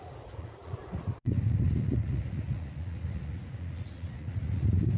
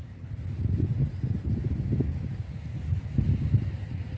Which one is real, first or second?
second